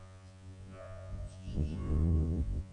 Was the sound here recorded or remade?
remade